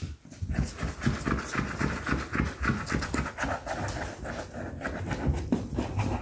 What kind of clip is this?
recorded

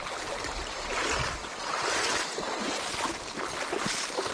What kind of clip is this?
recorded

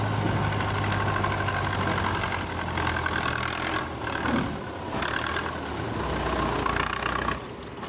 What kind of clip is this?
recorded